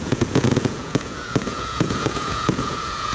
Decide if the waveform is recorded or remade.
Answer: remade